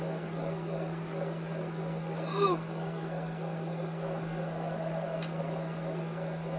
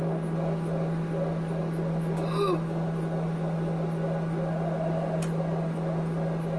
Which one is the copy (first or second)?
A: first